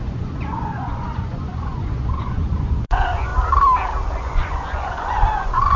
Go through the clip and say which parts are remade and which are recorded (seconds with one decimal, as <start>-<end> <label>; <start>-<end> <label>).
0.0-3.3 remade; 3.3-4.2 recorded; 4.2-5.8 remade

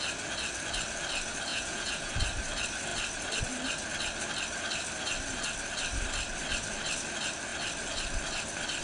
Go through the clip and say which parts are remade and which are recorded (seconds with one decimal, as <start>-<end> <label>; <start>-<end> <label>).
0.0-1.5 recorded; 1.5-2.1 remade; 2.1-8.8 recorded

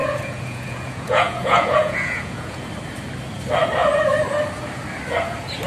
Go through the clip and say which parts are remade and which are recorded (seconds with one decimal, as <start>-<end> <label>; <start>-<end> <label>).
0.0-2.7 remade; 2.7-5.7 recorded

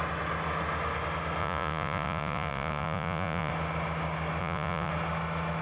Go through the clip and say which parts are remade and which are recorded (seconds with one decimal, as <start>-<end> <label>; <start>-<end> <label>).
0.0-1.4 recorded; 1.4-3.5 remade; 3.5-4.4 recorded; 4.4-4.9 remade; 4.9-5.6 recorded

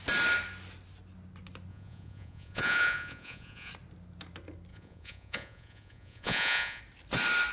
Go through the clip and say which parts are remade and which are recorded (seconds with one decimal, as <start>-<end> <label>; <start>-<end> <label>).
0.0-1.7 recorded; 1.7-3.7 remade; 3.7-4.7 recorded; 4.7-6.8 remade; 6.8-7.5 recorded

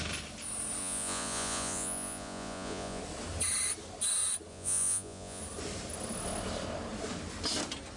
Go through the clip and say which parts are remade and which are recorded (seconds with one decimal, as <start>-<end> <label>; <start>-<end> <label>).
0.0-0.8 recorded; 0.8-3.0 remade; 3.0-4.5 recorded; 4.5-5.4 remade; 5.4-8.0 recorded

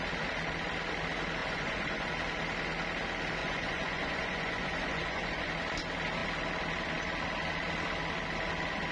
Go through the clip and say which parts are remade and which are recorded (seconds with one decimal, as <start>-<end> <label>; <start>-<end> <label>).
0.0-1.4 recorded; 1.4-2.1 remade; 2.1-3.4 recorded; 3.4-5.5 remade; 5.5-8.9 recorded